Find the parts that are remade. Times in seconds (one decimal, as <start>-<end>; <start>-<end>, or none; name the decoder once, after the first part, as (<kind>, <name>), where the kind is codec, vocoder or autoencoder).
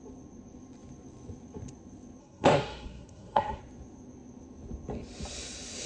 2.2-3.6 (codec, SNAC)